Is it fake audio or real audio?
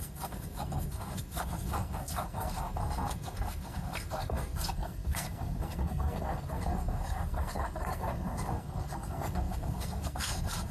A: fake